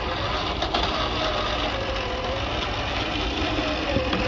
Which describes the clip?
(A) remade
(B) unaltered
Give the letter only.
B